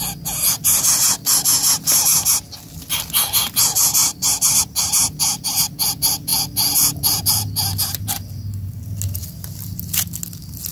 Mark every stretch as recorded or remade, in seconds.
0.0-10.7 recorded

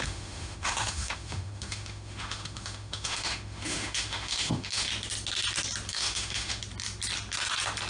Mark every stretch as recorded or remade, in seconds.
0.0-4.9 remade; 4.9-5.9 recorded; 5.9-6.6 remade; 6.6-7.9 recorded

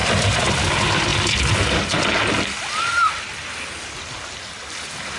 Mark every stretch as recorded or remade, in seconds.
0.0-5.2 recorded

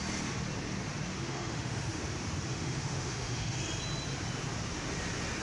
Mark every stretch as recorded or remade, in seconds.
0.0-1.1 recorded; 1.1-2.0 remade; 2.0-2.5 recorded; 2.5-3.6 remade; 3.6-5.4 recorded